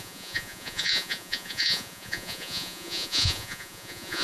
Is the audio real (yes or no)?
no